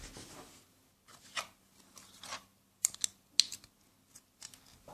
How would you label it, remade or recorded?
recorded